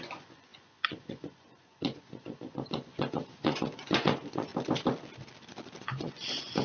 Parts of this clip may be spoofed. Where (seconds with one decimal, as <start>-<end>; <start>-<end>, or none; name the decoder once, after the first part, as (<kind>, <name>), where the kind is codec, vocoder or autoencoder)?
0.0-4.5 (vocoder, Vocos); 5.8-6.6